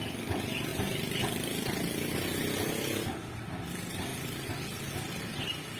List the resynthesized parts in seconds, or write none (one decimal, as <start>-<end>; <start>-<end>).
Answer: none